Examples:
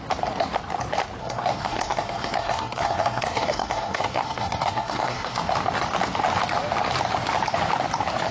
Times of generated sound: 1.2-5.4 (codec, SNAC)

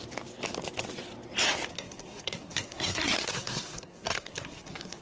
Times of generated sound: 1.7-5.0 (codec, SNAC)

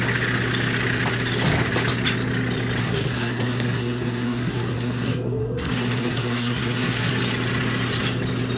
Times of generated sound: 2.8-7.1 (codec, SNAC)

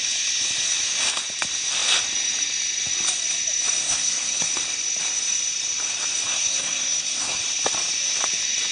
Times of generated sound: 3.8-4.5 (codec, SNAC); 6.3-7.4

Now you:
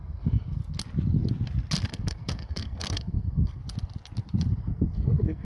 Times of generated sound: 0.0-0.6 (codec, SNAC); 1.9-3.6; 4.5-5.4

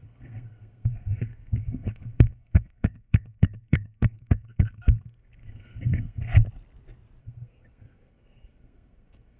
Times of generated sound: 0.0-6.3 (codec, SNAC); 7.2-9.4

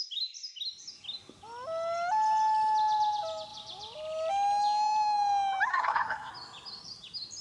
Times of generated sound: 5.7-6.3 (codec, SNAC)

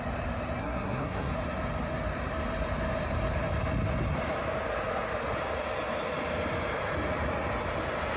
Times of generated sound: 0.6-1.3 (codec, SNAC)